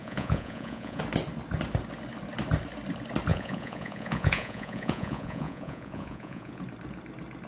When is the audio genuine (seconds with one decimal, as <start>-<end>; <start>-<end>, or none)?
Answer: 1.0-3.3; 6.6-7.5